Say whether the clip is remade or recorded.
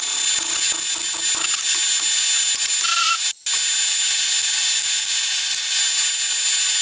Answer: recorded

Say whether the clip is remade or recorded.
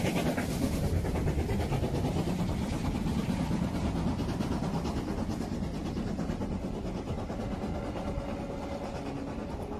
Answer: recorded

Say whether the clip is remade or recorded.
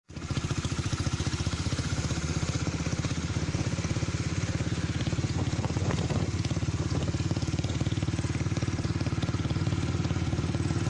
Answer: remade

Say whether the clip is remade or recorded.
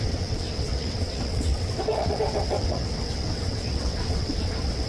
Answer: remade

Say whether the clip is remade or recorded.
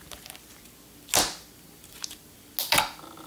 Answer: recorded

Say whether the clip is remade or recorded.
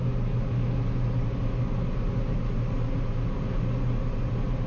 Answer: recorded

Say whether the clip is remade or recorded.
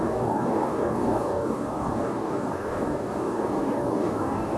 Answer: remade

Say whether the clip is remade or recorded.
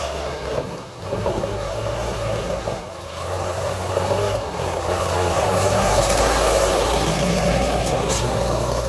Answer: remade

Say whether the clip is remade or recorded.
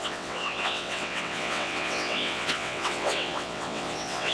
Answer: remade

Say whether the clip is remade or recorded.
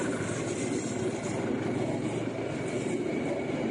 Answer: recorded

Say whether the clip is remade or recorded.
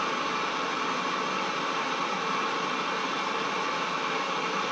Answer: recorded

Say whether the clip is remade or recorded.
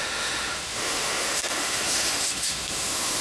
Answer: remade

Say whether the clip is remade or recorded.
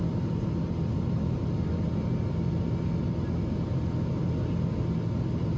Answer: recorded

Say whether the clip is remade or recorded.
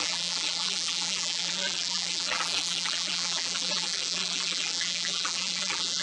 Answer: remade